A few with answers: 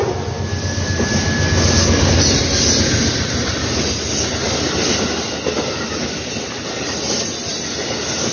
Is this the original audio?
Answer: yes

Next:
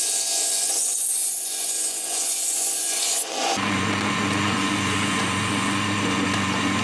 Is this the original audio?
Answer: no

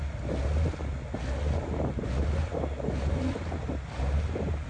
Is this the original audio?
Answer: yes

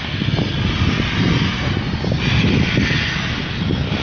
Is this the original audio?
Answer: yes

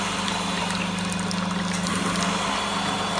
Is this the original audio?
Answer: yes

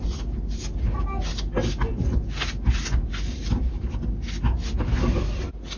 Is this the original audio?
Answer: yes